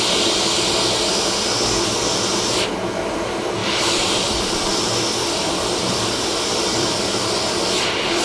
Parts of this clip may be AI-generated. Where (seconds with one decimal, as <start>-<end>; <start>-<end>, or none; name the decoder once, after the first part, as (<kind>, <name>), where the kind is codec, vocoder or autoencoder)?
3.6-4.8 (vocoder, BigVGAN v2); 5.2-8.2